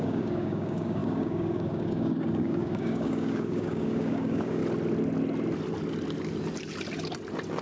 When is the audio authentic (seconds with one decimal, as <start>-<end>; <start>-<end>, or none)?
4.6-7.6